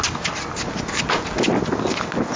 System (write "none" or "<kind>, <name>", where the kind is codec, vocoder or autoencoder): none